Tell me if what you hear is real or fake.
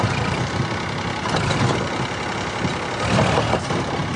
real